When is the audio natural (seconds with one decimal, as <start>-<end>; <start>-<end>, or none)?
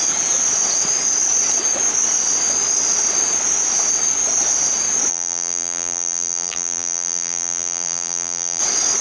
0.0-5.1; 8.6-9.0